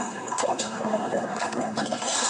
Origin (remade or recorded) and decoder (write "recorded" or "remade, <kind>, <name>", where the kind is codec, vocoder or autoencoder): remade, codec, SNAC